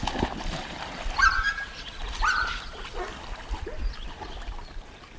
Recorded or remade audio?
recorded